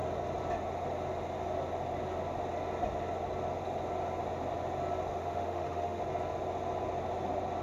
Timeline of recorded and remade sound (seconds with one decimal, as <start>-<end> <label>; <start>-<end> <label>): 0.0-5.1 recorded; 5.1-6.0 remade; 6.0-7.6 recorded